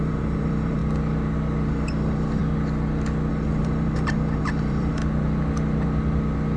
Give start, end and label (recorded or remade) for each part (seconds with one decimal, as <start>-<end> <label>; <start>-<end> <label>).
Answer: 0.0-0.8 remade; 0.8-1.7 recorded; 1.7-2.4 remade; 2.4-3.3 recorded; 3.3-5.0 remade; 5.0-6.6 recorded